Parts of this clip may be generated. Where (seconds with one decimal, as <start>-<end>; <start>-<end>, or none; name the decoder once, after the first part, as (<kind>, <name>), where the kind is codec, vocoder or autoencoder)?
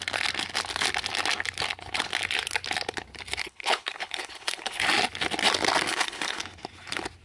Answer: 3.4-4.8 (codec, HILCodec); 5.9-6.4